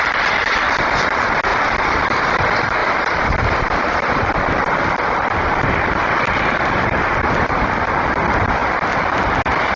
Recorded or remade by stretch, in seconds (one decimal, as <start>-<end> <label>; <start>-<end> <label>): 0.0-1.5 recorded; 1.5-2.2 remade; 2.2-2.8 recorded; 2.8-7.9 remade; 7.9-8.6 recorded; 8.6-9.1 remade; 9.1-9.8 recorded